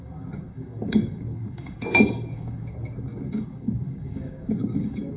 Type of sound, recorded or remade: remade